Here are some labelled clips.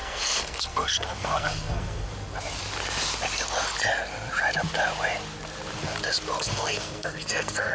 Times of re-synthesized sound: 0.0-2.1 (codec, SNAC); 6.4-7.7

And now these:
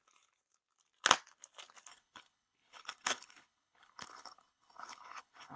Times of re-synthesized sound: 1.9-5.6 (codec, HILCodec)

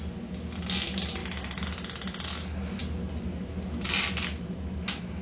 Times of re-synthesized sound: none

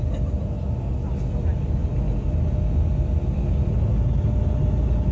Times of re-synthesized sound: none

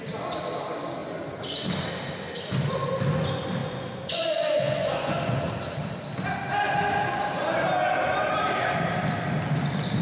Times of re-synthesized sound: 3.6-5.3 (vocoder, Vocos)

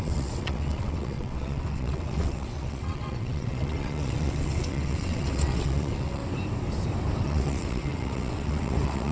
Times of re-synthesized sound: 0.0-6.2 (vocoder, WaveNeXt); 7.2-9.1

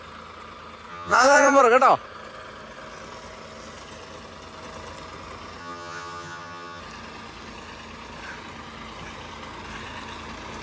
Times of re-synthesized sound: 0.9-1.6 (vocoder, HiFi-GAN); 5.6-6.8

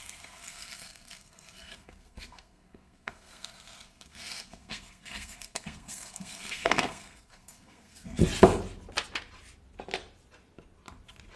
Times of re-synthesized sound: 0.0-8.2 (codec, SNAC)